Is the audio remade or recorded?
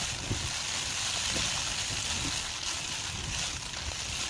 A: recorded